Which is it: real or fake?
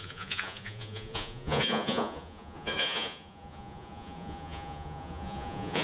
fake